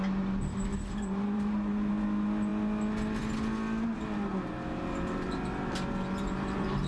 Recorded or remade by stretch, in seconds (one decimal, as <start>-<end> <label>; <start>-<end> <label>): 0.0-0.7 recorded; 0.7-1.9 remade; 1.9-4.3 recorded; 4.3-6.9 remade